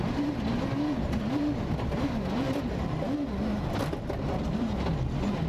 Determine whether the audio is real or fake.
real